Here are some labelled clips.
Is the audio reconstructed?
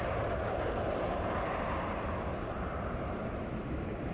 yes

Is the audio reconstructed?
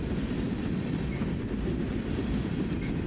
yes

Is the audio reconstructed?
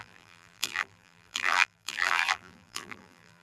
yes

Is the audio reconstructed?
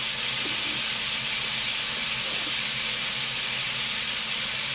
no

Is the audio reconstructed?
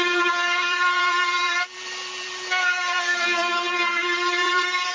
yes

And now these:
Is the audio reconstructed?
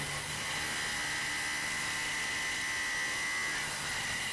no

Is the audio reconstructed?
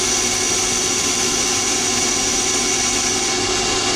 no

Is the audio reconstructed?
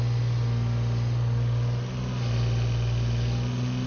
no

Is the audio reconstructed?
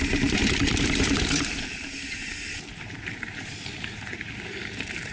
yes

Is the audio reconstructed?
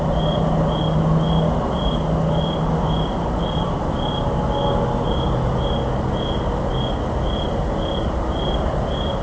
no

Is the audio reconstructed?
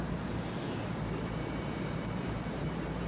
yes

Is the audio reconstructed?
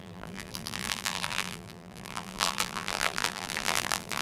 yes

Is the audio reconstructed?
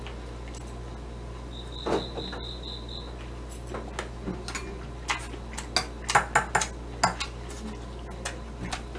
no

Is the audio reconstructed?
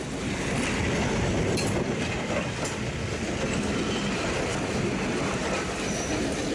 no